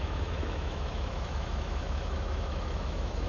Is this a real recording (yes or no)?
no